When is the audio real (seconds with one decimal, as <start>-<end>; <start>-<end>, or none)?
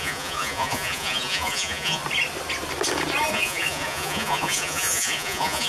2.0-3.3